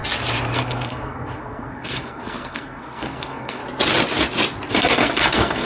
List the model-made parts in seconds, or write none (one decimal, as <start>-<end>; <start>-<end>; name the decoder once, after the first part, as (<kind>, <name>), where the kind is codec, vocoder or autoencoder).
0.5-3.6 (codec, SNAC); 4.7-5.6